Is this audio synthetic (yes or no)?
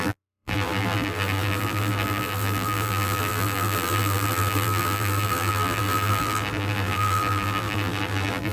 yes